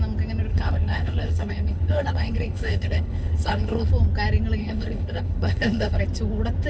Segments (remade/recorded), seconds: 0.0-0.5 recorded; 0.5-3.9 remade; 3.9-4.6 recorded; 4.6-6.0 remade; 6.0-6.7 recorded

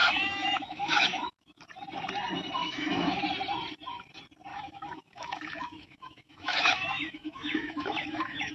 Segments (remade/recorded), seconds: 0.0-1.6 remade; 1.6-2.6 recorded; 2.6-3.2 remade; 3.2-4.5 recorded; 4.5-8.5 remade

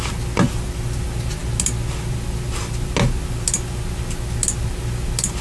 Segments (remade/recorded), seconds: 0.0-5.4 recorded

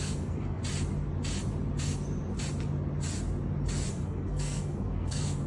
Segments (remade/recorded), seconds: 0.0-0.6 remade; 0.6-3.9 recorded; 3.9-5.5 remade

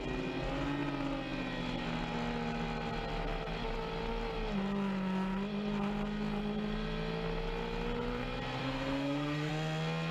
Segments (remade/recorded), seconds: 0.0-8.6 recorded; 8.6-9.5 remade; 9.5-10.1 recorded

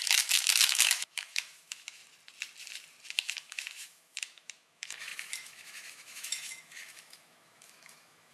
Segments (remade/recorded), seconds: 0.0-2.0 remade; 2.0-3.1 recorded; 3.1-8.3 remade

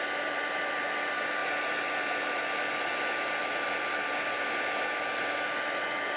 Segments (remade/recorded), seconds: 0.0-6.2 recorded